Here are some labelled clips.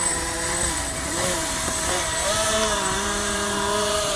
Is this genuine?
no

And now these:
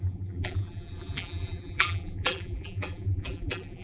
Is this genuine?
no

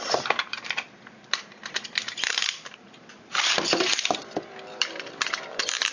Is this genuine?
no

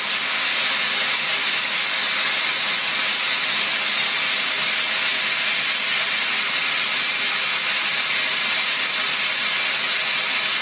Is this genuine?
yes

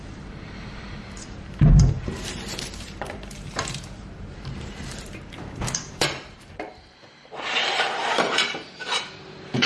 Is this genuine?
no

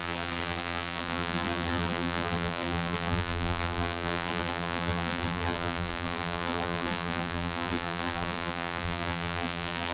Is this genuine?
no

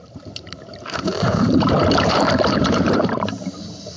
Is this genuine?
no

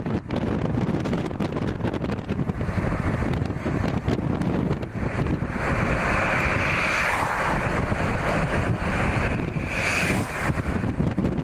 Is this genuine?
yes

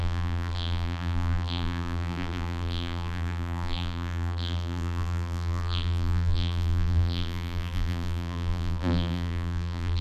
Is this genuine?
no